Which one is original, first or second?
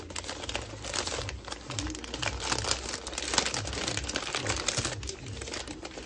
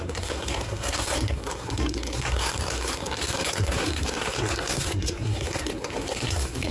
first